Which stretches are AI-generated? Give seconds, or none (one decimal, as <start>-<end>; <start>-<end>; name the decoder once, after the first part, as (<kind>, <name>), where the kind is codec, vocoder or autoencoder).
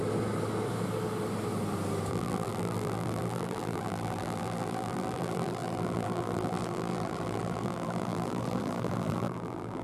2.1-9.8 (vocoder, BigVGAN v2)